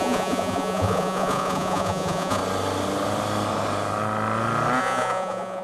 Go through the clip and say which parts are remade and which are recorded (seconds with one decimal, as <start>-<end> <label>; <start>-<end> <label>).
0.0-2.4 remade; 2.4-4.8 recorded; 4.8-5.6 remade